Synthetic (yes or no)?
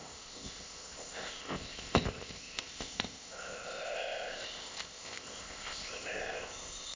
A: yes